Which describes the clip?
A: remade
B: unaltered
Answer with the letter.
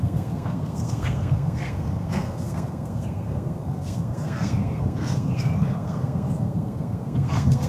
A